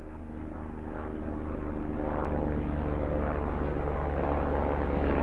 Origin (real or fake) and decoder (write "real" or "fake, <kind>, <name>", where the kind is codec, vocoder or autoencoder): real